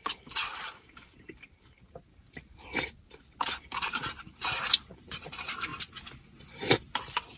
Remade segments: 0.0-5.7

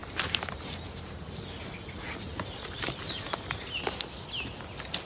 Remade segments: 0.0-1.6; 2.3-3.5

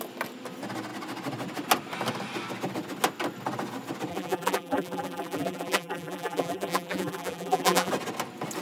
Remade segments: 4.1-7.9

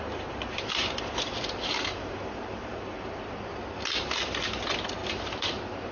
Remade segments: 0.5-3.5; 5.0-5.9

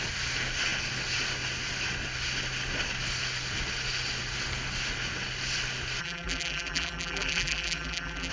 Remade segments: 6.0-8.3